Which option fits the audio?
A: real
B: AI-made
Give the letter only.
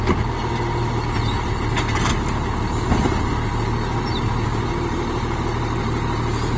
A